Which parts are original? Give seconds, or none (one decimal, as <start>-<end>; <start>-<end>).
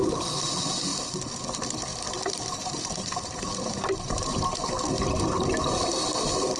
0.0-1.9; 4.7-6.6